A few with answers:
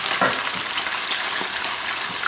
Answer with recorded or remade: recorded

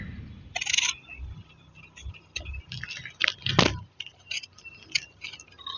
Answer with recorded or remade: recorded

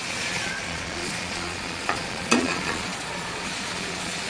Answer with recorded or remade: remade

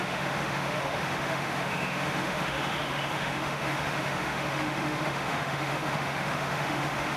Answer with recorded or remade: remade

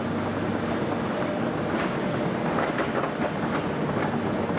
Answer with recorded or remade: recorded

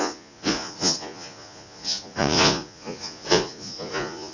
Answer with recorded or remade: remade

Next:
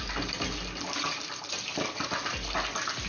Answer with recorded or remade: recorded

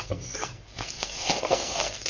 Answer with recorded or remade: remade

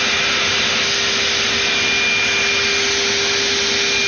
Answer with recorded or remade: recorded